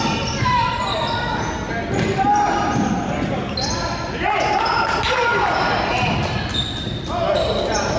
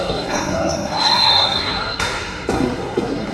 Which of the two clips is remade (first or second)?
second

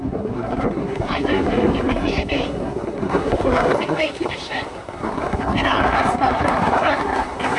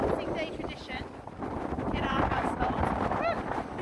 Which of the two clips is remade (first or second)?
first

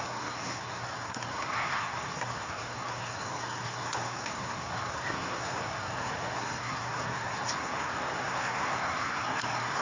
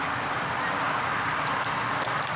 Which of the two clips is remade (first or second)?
first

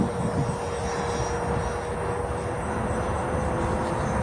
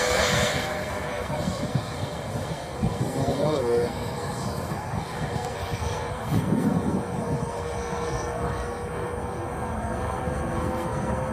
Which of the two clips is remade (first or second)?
second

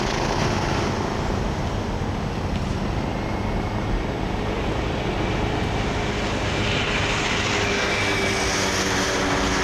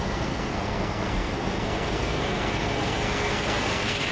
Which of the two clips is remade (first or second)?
second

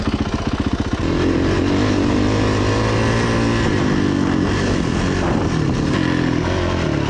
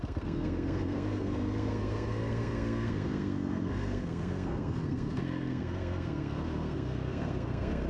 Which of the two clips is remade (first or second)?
second